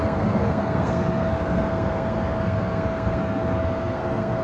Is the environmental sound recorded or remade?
remade